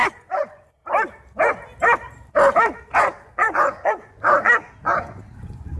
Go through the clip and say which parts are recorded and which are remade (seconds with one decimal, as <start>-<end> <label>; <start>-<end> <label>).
0.0-0.8 remade; 0.8-3.0 recorded; 3.0-5.8 remade